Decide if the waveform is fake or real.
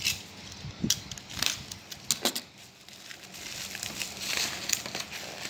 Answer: real